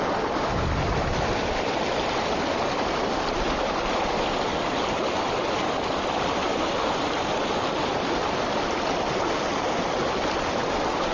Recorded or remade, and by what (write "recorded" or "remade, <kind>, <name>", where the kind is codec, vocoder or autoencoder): recorded